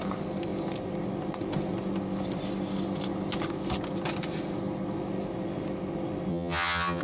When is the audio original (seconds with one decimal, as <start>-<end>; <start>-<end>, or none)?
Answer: 0.0-6.3